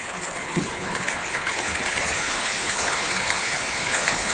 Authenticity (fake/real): fake